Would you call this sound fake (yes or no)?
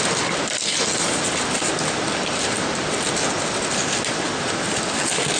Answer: no